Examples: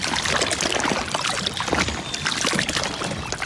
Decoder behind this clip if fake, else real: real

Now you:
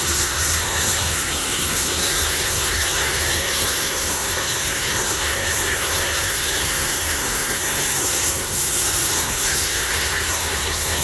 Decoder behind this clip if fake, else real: fake, codec, SNAC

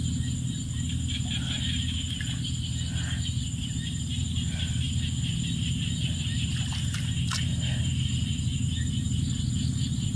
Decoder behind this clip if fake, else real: real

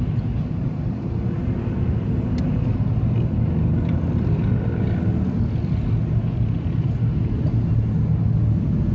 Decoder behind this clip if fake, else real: real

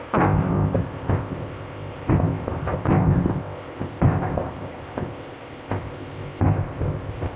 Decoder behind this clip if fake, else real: fake, codec, ZipCodec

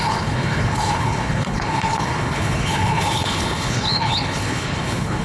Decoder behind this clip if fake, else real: fake, codec, HILCodec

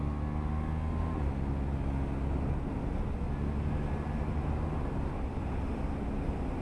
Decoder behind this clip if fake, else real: real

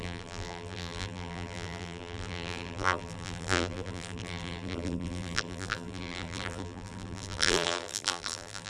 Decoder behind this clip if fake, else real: fake, vocoder, BigVGAN v2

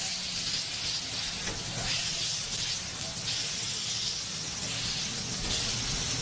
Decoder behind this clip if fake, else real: real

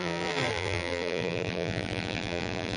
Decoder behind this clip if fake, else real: fake, vocoder, BigVGAN v2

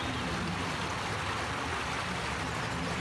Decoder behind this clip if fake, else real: real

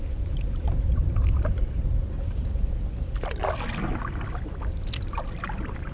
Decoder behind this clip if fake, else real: real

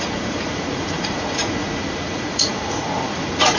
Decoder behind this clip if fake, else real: fake, vocoder, Vocos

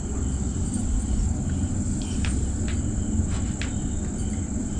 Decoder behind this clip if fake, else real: real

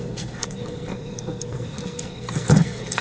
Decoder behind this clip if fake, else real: fake, codec, SNAC